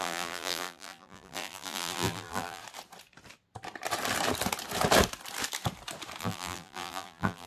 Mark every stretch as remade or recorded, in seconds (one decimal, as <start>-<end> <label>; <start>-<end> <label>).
0.0-2.6 remade; 2.6-6.2 recorded; 6.2-7.5 remade

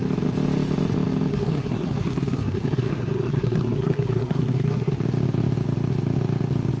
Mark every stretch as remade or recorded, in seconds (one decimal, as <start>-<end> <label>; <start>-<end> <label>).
0.0-1.3 recorded; 1.3-4.9 remade; 4.9-6.8 recorded

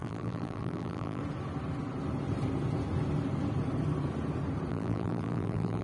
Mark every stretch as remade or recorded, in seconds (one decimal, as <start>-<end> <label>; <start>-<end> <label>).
0.0-1.2 remade; 1.2-4.7 recorded; 4.7-5.8 remade